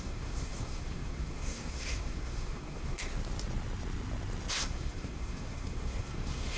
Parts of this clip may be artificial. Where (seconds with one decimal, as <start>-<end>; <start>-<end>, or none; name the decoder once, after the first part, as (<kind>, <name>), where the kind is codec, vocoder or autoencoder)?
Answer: 0.0-3.1 (codec, SNAC); 4.5-6.6